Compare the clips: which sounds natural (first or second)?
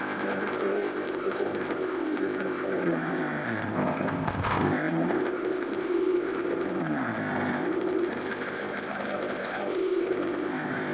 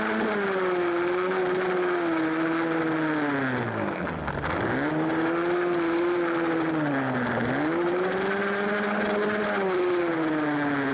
second